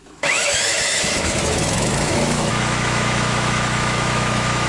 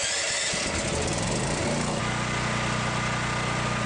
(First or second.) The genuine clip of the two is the second